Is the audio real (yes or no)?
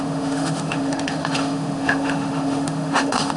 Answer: no